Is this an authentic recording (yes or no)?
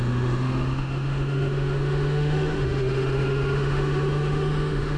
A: no